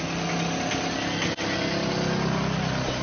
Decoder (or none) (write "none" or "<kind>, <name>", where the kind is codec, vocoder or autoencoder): none